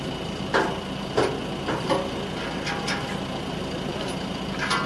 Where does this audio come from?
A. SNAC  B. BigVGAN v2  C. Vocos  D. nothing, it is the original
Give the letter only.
D